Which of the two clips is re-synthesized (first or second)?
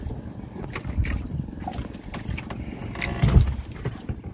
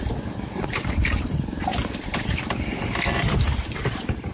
second